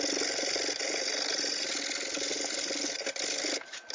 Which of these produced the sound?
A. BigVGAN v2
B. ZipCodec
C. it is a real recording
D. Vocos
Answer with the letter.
C